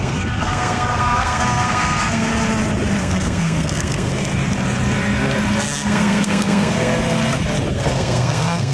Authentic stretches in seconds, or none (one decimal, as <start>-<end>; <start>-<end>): 2.3-3.0; 4.1-5.6; 6.9-7.7